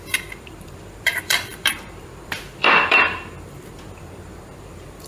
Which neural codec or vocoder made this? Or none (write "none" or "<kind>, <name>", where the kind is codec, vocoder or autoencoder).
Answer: vocoder, BigVGAN v2